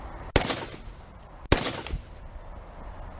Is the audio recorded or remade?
recorded